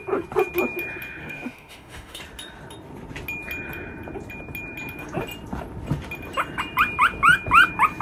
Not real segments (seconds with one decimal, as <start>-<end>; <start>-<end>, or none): 1.2-2.2